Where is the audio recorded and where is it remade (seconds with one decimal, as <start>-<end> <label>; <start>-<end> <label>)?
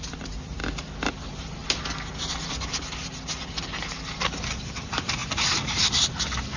0.0-0.6 remade; 0.6-1.1 recorded; 1.1-1.6 remade; 1.6-3.9 recorded; 3.9-6.6 remade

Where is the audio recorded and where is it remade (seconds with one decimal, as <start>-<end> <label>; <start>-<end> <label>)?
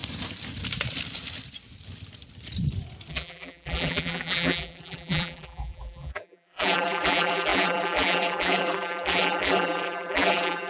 0.0-3.1 recorded; 3.1-10.7 remade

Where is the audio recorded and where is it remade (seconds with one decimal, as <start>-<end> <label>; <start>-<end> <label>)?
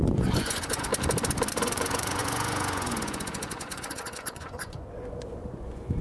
0.0-0.9 remade; 0.9-1.5 recorded; 1.5-6.0 remade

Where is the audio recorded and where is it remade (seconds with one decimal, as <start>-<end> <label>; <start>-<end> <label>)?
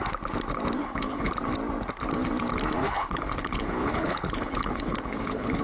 0.0-0.8 recorded; 0.8-1.3 remade; 1.3-2.8 recorded; 2.8-5.6 remade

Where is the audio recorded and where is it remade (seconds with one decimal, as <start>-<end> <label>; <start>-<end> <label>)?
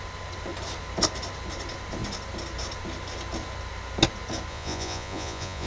0.0-4.5 recorded; 4.5-5.7 remade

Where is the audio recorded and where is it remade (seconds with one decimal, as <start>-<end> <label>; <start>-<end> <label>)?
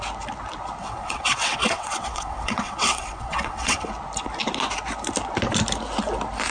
0.0-0.8 recorded; 0.8-3.9 remade; 3.9-6.5 recorded